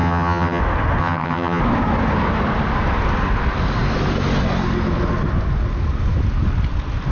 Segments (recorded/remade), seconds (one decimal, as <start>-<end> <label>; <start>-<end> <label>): 0.0-0.6 remade; 0.6-1.0 recorded; 1.0-1.6 remade; 1.6-7.1 recorded